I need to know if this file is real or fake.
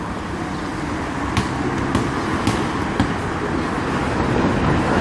real